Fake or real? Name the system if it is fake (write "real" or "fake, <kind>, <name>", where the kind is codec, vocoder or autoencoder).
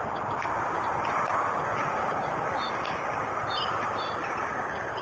real